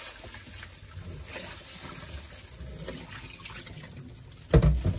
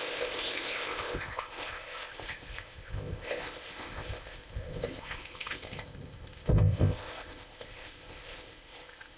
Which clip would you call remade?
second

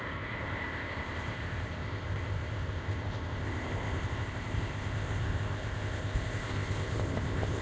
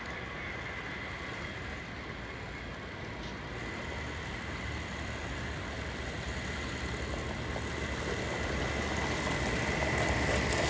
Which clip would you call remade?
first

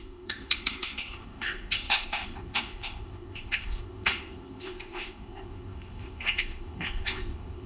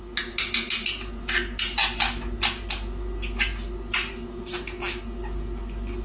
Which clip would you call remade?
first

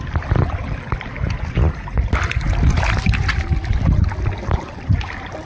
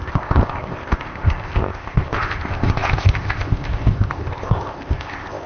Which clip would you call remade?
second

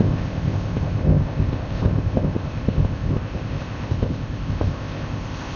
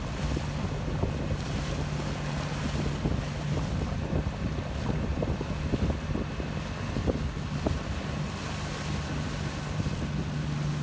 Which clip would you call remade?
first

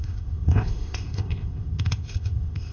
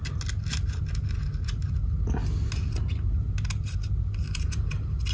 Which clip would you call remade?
first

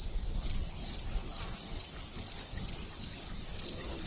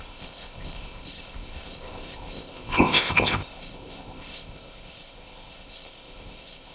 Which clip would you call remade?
second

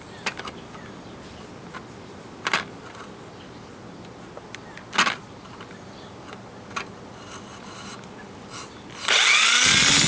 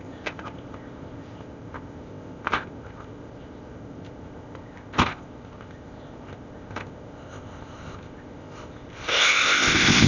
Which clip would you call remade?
second